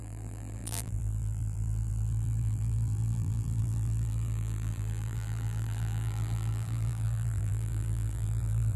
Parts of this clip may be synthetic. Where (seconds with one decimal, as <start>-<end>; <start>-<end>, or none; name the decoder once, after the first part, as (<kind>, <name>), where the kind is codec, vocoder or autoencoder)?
0.0-8.8 (vocoder, BigVGAN v2)